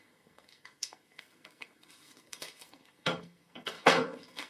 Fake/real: fake